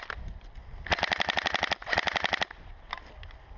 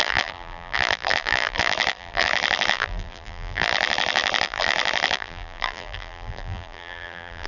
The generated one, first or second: second